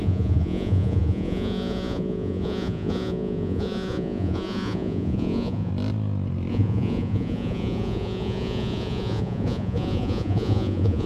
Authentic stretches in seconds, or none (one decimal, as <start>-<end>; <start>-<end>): 5.7-6.5